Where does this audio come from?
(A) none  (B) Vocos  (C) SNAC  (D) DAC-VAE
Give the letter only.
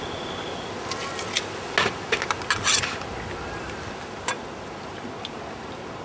A